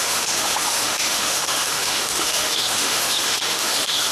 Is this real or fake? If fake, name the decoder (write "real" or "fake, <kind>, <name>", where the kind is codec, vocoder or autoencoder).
fake, autoencoder, DAC-VAE